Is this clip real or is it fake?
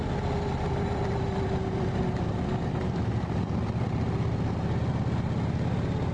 real